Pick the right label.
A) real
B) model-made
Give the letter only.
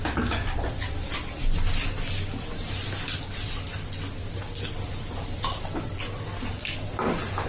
A